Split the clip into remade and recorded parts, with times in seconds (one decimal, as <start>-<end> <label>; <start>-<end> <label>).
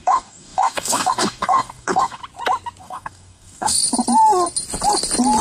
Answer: 0.0-2.2 remade; 2.2-2.8 recorded; 2.8-3.8 remade; 3.8-5.4 recorded